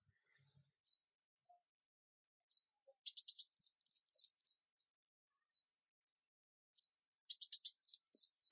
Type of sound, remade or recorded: recorded